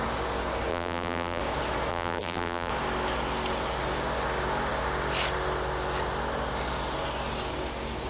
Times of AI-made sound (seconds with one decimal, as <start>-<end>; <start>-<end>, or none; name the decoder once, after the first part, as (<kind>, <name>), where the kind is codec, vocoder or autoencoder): 0.7-1.4 (vocoder, BigVGAN v2); 1.9-2.7